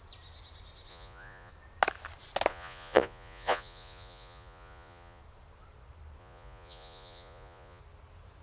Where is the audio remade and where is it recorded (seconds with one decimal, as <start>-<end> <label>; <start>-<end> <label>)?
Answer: 0.0-0.9 recorded; 0.9-1.5 remade; 1.5-2.5 recorded; 2.5-5.2 remade; 5.2-6.2 recorded; 6.2-7.8 remade; 7.8-8.4 recorded